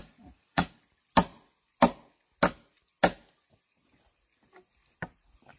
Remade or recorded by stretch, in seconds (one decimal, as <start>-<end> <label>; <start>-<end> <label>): 0.0-0.7 remade; 0.7-5.6 recorded